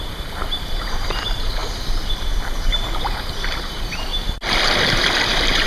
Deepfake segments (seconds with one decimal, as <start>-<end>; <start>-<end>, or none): 0.0-1.6; 3.6-4.1; 5.2-5.7